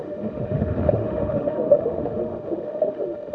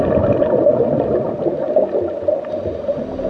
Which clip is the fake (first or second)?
first